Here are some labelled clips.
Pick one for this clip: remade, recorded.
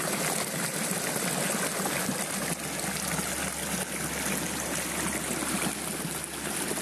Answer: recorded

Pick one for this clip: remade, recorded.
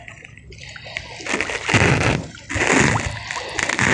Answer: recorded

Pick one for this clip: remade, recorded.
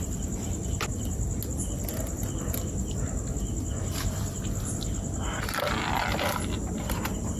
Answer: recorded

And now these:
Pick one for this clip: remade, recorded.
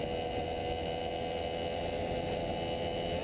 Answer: recorded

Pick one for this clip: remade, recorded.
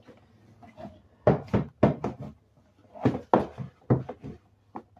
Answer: recorded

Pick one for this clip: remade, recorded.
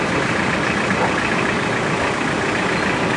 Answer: remade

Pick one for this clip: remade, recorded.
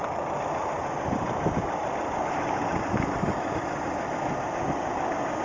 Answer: recorded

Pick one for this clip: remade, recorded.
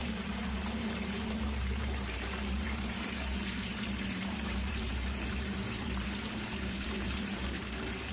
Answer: remade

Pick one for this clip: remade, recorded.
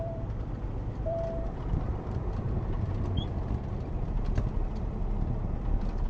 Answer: remade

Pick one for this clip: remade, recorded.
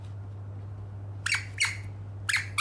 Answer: recorded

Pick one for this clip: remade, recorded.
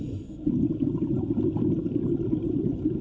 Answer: recorded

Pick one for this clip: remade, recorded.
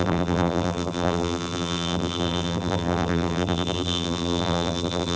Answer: remade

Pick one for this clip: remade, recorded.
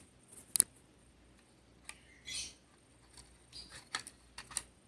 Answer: recorded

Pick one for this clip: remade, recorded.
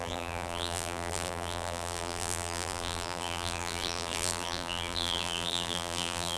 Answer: remade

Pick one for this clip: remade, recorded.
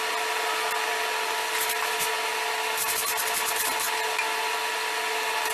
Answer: recorded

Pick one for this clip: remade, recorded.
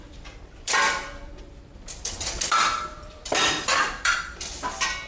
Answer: remade